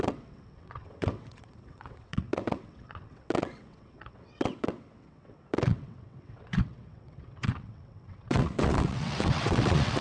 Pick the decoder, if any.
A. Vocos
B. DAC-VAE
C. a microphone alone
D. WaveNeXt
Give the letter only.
D